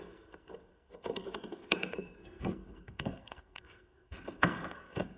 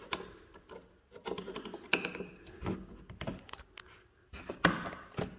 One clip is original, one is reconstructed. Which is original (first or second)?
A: second